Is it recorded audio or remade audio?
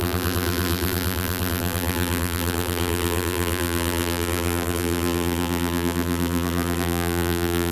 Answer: remade